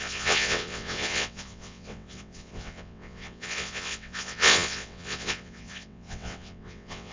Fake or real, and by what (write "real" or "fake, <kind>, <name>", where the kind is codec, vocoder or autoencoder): fake, vocoder, WaveNeXt